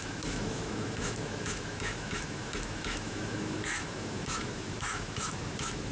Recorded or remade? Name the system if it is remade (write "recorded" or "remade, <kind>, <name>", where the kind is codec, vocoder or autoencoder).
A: remade, autoencoder, DAC-VAE